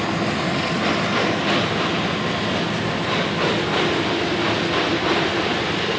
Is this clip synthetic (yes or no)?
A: no